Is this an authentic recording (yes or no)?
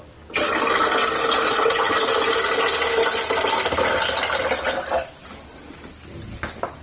yes